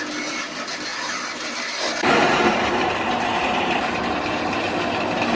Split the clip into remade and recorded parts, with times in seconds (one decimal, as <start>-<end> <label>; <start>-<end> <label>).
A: 0.0-0.9 recorded; 0.9-3.8 remade; 3.8-5.3 recorded